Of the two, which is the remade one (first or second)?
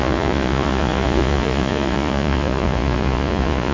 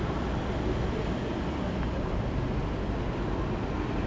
first